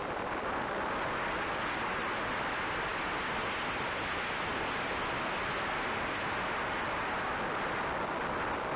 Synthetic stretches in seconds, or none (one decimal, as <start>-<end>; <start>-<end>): none